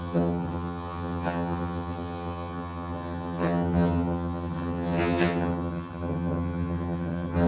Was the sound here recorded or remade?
remade